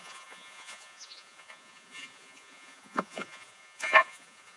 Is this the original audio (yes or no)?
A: no